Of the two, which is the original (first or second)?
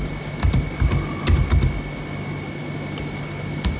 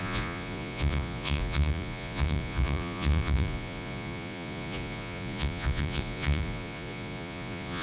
first